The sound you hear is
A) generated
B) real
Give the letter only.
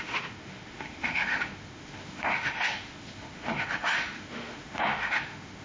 A